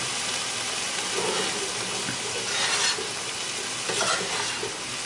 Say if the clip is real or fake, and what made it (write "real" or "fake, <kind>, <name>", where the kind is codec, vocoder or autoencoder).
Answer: real